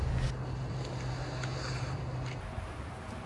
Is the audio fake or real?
real